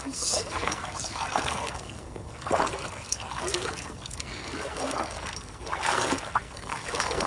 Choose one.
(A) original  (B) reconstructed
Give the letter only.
B